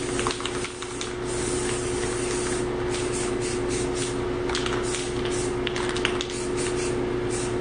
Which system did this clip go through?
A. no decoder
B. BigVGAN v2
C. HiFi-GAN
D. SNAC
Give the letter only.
A